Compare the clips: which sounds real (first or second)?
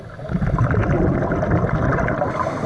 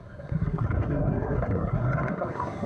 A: first